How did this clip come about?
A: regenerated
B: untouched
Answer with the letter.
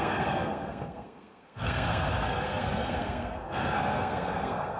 A